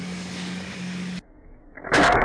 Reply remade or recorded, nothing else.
remade